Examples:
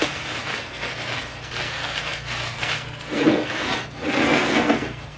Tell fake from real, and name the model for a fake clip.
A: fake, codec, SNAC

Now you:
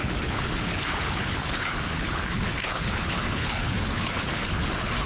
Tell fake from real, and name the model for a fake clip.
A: fake, codec, HILCodec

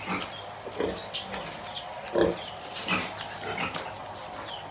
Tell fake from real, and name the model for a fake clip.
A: real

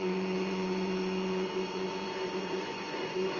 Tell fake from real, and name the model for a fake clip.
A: fake, vocoder, Vocos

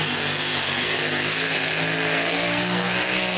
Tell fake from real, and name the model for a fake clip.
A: fake, codec, SNAC